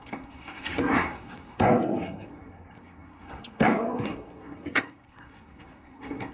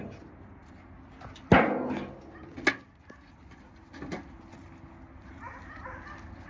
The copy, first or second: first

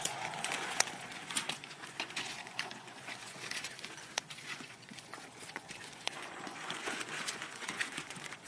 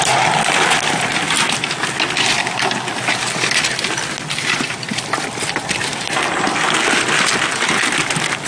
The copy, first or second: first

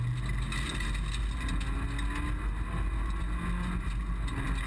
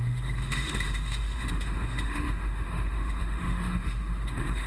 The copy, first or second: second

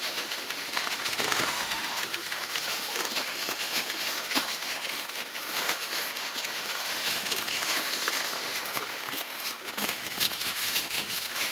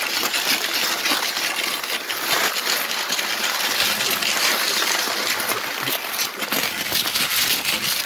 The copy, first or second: first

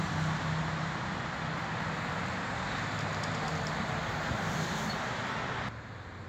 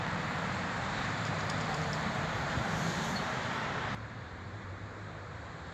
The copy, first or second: second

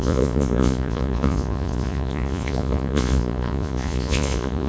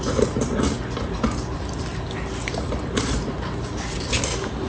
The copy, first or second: first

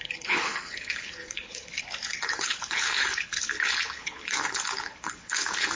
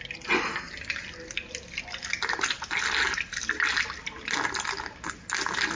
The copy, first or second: first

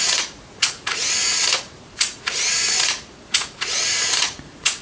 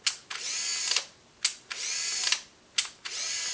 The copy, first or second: first